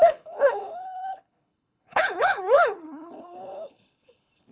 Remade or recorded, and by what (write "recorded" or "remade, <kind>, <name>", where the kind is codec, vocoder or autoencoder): remade, codec, HILCodec